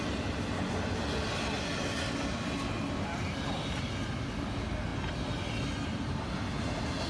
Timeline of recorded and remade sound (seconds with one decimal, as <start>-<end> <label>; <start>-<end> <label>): 0.0-7.1 recorded